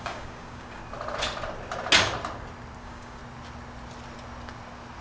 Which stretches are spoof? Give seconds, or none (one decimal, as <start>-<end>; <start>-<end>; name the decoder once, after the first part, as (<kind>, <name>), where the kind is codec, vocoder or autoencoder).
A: 0.0-0.8 (codec, DAC); 2.8-3.2